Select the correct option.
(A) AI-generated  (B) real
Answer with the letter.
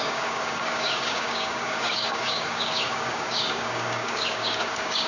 A